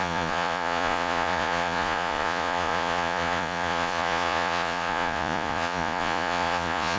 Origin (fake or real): fake